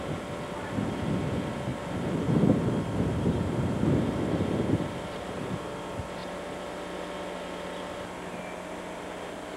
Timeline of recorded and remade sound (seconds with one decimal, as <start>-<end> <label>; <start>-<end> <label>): 0.0-1.7 recorded; 1.7-5.3 remade; 5.3-9.6 recorded

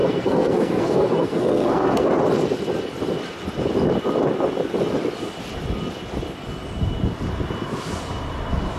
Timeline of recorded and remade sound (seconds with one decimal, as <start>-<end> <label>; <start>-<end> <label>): 0.0-2.1 remade; 2.1-8.8 recorded

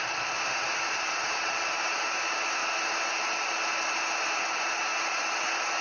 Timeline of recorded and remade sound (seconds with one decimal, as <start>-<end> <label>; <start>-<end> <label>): 0.0-2.6 remade; 2.6-4.5 recorded; 4.5-5.8 remade

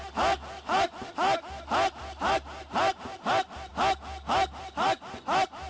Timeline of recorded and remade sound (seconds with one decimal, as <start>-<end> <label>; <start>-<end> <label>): 0.0-5.7 recorded

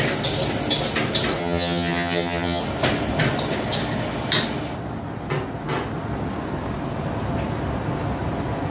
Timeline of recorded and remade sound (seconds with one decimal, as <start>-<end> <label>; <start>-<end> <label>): 0.0-1.4 recorded; 1.4-2.6 remade; 2.6-8.7 recorded

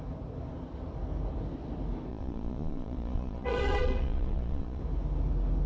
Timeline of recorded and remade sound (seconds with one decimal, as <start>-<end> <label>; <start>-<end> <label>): 0.0-2.1 recorded; 2.1-4.8 remade; 4.8-5.7 recorded

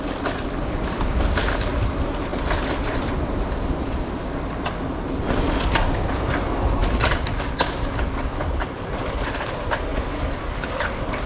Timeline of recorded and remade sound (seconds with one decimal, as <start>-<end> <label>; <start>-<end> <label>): 0.0-9.9 recorded; 9.9-10.8 remade; 10.8-11.3 recorded